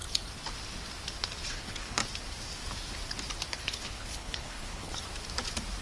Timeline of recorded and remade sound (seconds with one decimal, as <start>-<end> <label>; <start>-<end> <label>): 0.0-1.5 recorded; 1.5-2.0 remade; 2.0-3.5 recorded; 3.5-4.9 remade; 4.9-5.8 recorded